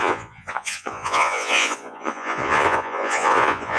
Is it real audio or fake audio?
fake